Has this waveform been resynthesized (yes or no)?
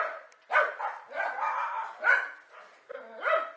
no